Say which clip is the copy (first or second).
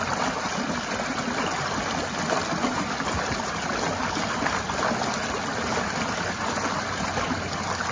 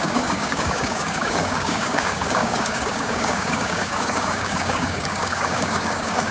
second